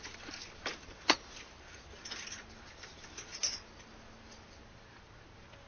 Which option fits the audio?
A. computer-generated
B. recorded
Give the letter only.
B